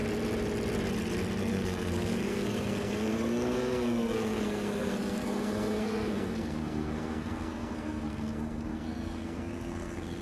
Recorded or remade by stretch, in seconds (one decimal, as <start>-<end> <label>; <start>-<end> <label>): 0.0-1.4 recorded; 1.4-10.2 remade

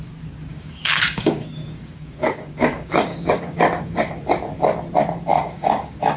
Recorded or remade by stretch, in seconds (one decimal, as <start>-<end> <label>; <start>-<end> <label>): 0.0-0.5 recorded; 0.5-4.2 remade; 4.2-5.3 recorded; 5.3-6.2 remade

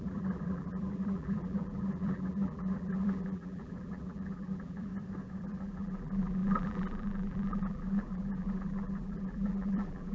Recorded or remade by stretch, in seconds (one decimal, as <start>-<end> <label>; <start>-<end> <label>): 0.0-4.9 remade; 4.9-5.4 recorded; 5.4-10.1 remade

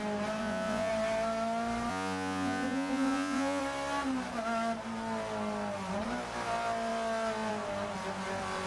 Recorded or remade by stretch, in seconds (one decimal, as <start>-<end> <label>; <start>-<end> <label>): 0.0-0.4 recorded; 0.4-0.9 remade; 0.9-1.9 recorded; 1.9-3.6 remade; 3.6-8.7 recorded